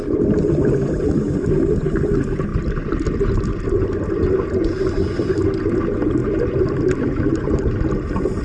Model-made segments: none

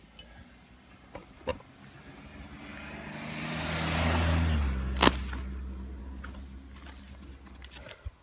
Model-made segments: none

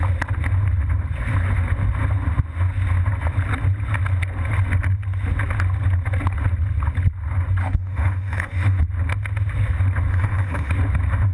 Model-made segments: 7.6-8.8 (autoencoder, DAC-VAE); 10.1-10.7

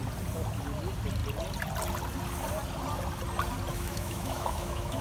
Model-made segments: 3.7-5.0 (autoencoder, DAC-VAE)